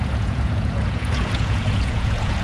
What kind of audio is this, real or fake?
fake